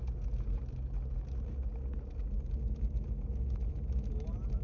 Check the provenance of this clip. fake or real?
real